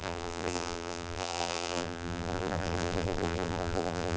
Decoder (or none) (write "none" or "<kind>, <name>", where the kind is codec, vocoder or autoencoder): vocoder, BigVGAN v2